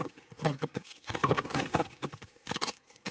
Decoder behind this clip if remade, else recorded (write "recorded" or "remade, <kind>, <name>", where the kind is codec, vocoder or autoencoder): remade, codec, SNAC